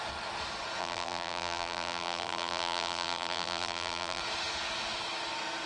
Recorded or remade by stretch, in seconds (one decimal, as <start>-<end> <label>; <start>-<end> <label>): 0.0-0.8 recorded; 0.8-4.2 remade; 4.2-5.7 recorded